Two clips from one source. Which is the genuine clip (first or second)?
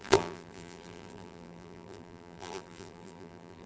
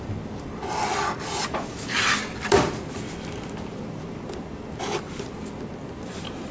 second